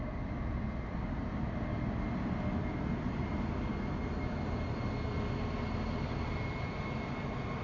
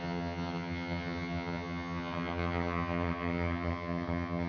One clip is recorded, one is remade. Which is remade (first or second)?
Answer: second